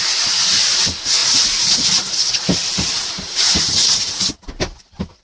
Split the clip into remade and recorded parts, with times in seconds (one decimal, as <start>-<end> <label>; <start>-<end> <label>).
0.0-1.2 recorded; 1.2-4.3 remade; 4.3-5.2 recorded